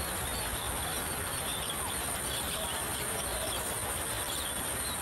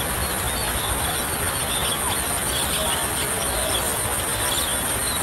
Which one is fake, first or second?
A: first